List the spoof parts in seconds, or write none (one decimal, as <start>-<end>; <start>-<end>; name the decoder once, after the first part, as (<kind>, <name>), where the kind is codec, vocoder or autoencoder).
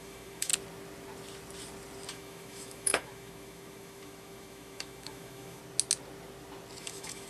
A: 0.0-0.5 (autoencoder, DAC-VAE); 2.1-5.6; 6.8-7.3